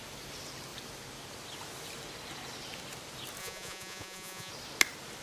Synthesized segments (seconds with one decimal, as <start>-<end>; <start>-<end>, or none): 3.4-4.5